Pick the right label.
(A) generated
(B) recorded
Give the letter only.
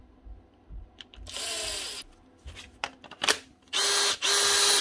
B